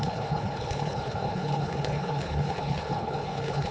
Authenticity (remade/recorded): remade